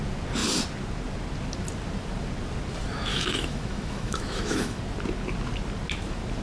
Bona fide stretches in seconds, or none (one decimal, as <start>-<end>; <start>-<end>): 0.0-3.1; 4.8-6.4

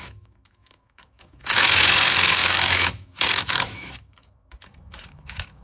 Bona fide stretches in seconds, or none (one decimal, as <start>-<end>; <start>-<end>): none

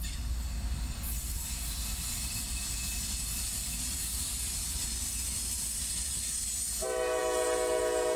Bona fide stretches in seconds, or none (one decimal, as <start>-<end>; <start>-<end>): 0.0-8.2